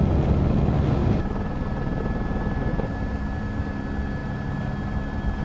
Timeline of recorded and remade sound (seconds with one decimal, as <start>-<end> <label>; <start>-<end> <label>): 0.0-1.0 recorded; 1.0-2.0 remade; 2.0-2.7 recorded; 2.7-3.7 remade; 3.7-4.2 recorded; 4.2-5.4 remade